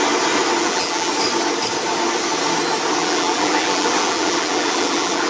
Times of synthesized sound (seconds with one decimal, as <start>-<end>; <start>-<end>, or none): 0.6-1.1; 3.0-5.3